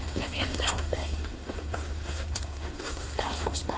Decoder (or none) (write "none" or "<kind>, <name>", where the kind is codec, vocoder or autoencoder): codec, SNAC